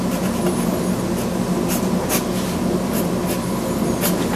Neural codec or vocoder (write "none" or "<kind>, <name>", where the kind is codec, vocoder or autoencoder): none